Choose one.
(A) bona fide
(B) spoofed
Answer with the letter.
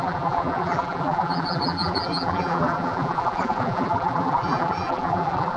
B